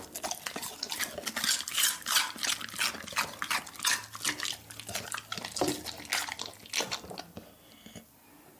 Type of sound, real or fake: real